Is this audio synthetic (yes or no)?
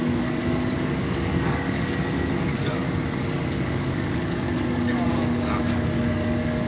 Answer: yes